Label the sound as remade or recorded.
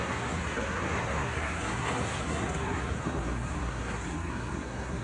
remade